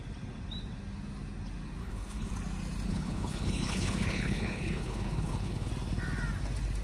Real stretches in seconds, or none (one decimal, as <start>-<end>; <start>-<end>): 0.0-1.8; 2.3-2.9; 5.7-6.8